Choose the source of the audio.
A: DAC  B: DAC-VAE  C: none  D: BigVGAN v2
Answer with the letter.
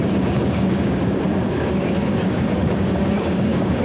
A